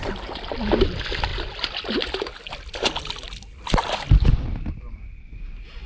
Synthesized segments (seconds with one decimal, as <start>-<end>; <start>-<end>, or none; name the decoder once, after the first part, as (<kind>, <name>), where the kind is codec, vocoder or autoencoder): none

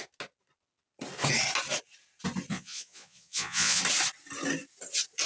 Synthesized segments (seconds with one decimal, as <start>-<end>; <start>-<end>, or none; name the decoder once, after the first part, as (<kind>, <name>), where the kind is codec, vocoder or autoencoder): 2.5-3.8 (vocoder, Vocos)

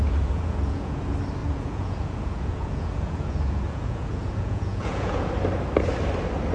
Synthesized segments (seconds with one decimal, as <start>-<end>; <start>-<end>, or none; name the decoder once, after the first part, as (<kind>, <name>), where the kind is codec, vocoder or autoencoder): 0.0-1.0 (vocoder, Vocos); 1.4-5.3